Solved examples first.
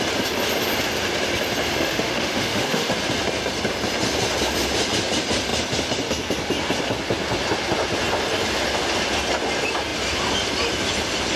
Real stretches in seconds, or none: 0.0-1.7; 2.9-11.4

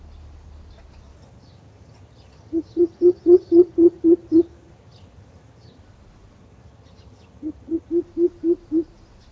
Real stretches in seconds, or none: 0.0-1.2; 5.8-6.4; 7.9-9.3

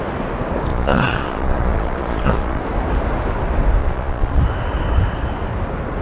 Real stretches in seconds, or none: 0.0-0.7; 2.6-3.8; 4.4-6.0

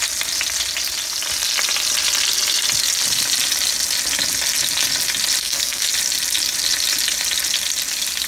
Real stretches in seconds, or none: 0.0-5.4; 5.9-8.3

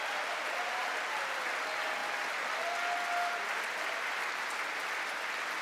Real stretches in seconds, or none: 0.0-5.6

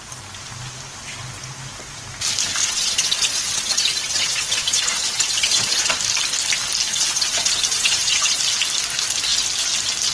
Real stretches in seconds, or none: 0.0-2.6; 6.0-6.9; 8.4-10.1

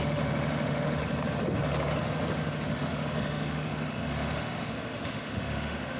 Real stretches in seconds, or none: 1.0-2.7